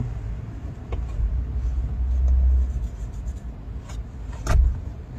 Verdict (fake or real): real